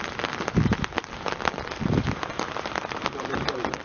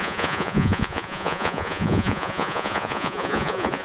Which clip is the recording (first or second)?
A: first